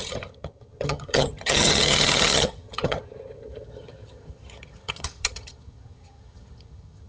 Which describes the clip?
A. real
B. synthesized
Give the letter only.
B